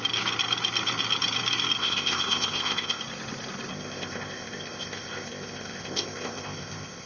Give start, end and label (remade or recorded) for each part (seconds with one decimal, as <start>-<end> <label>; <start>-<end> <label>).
0.0-1.8 recorded; 1.8-3.0 remade; 3.0-3.7 recorded; 3.7-7.1 remade